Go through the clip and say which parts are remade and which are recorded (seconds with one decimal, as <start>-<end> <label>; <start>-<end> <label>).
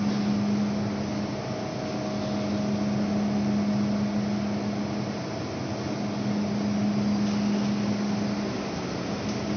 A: 0.0-9.6 recorded